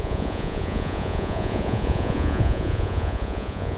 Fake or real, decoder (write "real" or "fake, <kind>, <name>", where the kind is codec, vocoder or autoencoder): fake, vocoder, Vocos